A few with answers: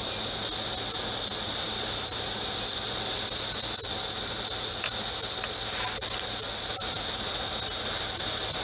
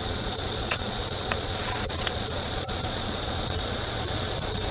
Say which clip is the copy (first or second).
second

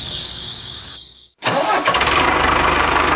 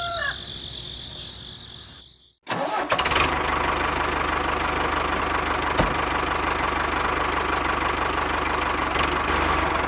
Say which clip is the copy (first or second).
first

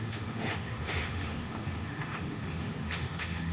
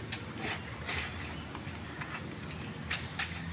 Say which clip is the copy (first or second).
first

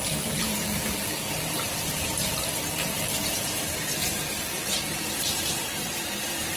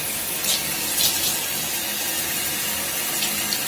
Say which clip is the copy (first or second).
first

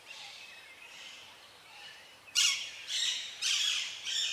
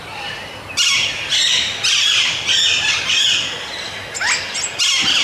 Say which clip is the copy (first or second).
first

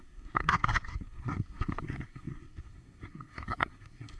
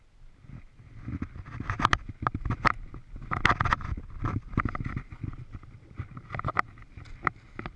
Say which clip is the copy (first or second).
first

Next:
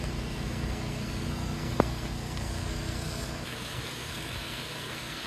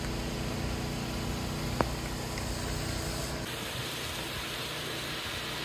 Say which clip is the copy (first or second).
first